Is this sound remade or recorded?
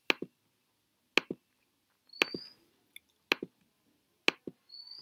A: recorded